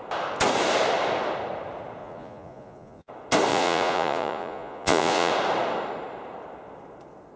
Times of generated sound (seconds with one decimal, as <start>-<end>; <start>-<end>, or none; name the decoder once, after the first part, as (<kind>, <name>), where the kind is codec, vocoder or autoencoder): 2.0-3.1 (vocoder, Vocos); 3.5-5.3